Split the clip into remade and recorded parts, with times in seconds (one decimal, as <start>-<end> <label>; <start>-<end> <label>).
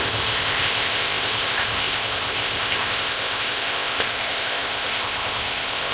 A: 0.0-5.9 remade